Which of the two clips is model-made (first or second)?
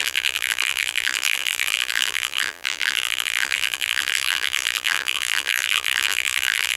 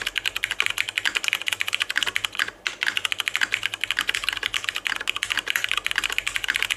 first